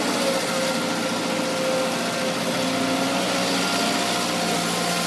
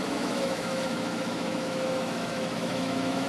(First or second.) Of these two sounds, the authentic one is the first